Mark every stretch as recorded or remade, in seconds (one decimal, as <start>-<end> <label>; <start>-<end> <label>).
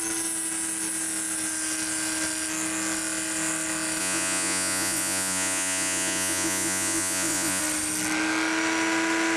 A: 0.0-4.0 recorded; 4.0-7.6 remade; 7.6-9.4 recorded